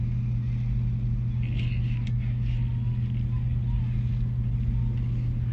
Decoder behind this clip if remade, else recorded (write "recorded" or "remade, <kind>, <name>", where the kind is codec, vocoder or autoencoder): recorded